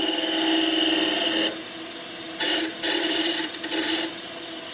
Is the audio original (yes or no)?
yes